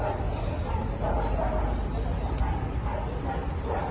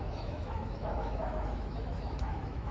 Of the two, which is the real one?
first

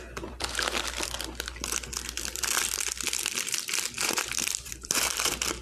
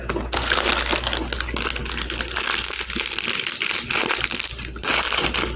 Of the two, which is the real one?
second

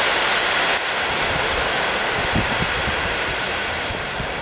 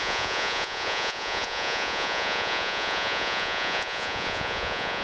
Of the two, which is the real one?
first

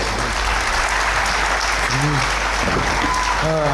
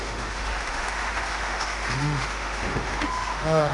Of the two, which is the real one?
first